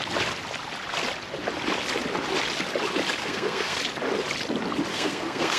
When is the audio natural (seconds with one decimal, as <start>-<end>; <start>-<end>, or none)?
0.0-3.2; 3.8-4.9